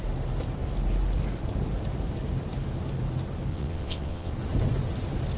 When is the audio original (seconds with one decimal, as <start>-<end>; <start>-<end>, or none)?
0.0-3.5; 4.3-5.4

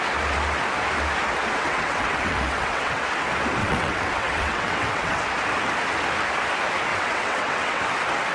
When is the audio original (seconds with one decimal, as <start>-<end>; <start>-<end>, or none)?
0.0-1.6; 3.0-3.6; 5.2-6.9; 7.8-8.3

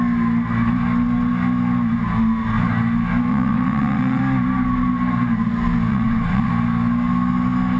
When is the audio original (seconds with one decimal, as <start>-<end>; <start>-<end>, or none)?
0.0-3.3; 4.2-5.9; 6.5-7.8

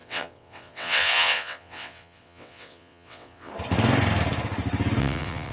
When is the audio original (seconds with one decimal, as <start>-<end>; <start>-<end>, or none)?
3.5-5.0

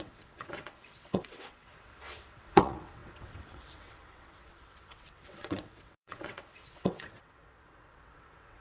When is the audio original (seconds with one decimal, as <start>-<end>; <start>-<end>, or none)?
none

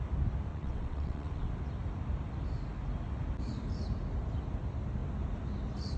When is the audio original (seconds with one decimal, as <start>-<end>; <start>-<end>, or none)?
0.0-0.5; 1.5-6.0

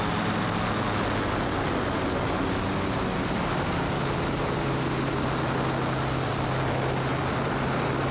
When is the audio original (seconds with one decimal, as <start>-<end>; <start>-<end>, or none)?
0.0-8.1